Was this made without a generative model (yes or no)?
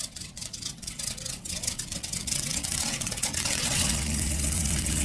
no